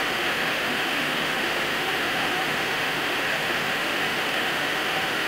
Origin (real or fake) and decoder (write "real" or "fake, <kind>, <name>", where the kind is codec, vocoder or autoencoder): fake, autoencoder, DAC-VAE